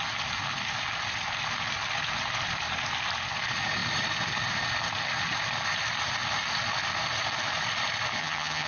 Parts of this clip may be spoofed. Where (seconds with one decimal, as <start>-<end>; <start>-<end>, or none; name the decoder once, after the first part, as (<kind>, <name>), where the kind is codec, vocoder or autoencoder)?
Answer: 8.2-8.7 (vocoder, HiFi-GAN)